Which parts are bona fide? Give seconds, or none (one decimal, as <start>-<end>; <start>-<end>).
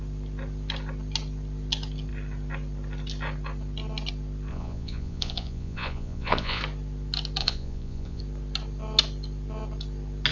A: 0.0-4.5; 6.6-7.4; 8.2-10.3